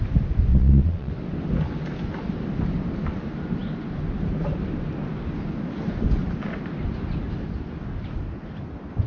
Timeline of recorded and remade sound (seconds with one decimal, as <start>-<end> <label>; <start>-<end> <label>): 0.0-0.5 recorded; 0.5-1.1 remade; 1.1-9.1 recorded